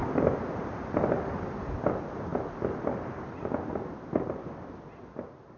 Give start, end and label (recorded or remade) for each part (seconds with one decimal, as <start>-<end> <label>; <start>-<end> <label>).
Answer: 0.0-5.6 recorded